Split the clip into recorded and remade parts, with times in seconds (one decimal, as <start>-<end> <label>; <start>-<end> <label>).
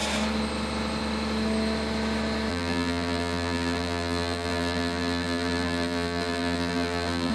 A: 0.0-2.5 recorded; 2.5-7.3 remade